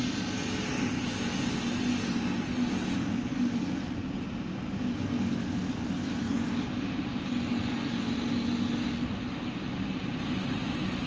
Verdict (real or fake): real